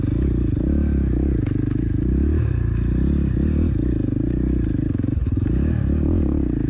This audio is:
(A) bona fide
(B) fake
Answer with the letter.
A